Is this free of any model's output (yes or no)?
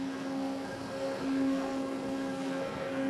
no